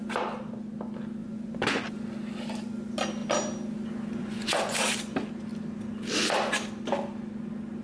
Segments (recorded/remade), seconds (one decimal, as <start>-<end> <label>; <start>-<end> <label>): 0.0-1.2 recorded; 1.2-1.8 remade; 1.8-4.2 recorded; 4.2-4.9 remade; 4.9-7.8 recorded